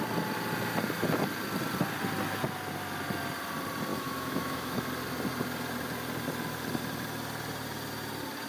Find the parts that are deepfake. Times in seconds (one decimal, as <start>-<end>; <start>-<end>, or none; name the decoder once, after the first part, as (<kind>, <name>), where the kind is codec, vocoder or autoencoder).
3.9-4.8 (autoencoder, DAC-VAE)